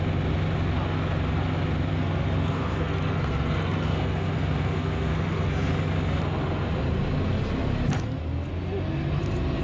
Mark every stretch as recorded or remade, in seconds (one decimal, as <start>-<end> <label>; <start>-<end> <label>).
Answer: 0.0-1.9 recorded; 1.9-5.7 remade; 5.7-9.6 recorded